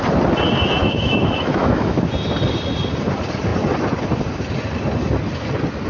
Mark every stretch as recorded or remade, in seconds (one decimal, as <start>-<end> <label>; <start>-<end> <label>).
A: 0.0-0.8 recorded; 0.8-2.0 remade; 2.0-5.9 recorded